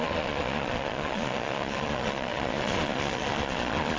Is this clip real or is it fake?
fake